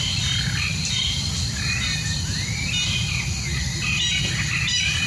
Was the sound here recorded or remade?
recorded